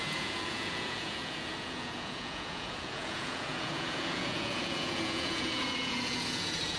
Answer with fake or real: fake